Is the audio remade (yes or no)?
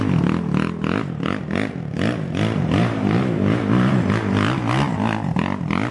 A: no